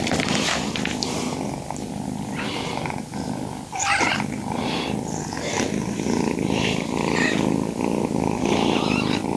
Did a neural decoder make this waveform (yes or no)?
no